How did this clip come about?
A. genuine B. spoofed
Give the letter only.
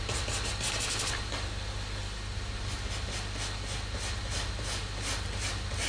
A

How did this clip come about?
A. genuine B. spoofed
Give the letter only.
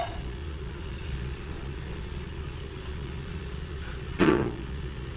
B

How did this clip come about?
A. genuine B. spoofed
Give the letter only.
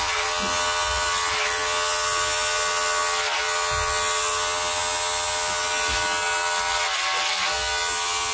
A